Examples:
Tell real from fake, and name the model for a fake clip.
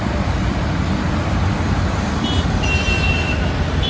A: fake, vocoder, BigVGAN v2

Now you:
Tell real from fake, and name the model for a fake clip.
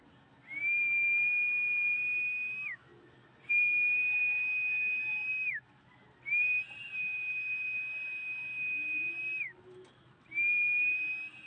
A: real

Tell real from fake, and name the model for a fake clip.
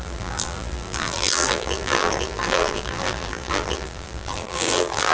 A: fake, vocoder, BigVGAN v2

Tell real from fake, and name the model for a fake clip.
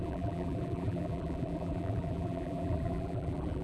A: fake, vocoder, BigVGAN v2